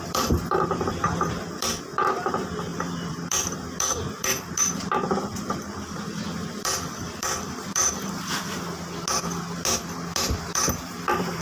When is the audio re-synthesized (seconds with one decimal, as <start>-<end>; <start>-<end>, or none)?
0.0-7.8; 10.2-11.4

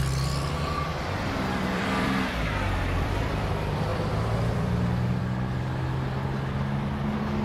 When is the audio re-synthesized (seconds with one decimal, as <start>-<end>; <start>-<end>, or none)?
0.9-3.5; 3.9-5.2

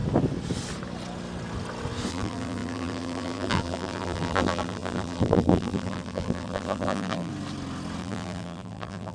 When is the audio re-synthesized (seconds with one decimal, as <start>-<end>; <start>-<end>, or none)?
2.1-7.3; 8.0-9.1

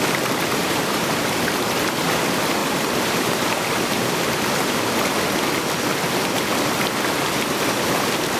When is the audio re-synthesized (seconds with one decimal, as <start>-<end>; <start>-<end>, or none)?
0.6-1.4; 2.6-4.8

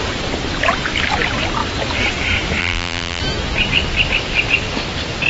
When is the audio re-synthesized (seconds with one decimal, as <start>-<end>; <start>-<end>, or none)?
2.6-3.2

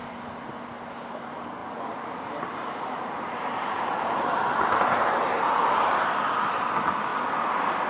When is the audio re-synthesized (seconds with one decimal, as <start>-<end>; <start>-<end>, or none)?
1.6-6.1

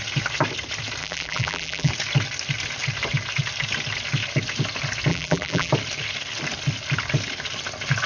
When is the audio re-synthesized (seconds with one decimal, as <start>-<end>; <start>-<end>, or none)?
1.0-1.9; 5.1-5.7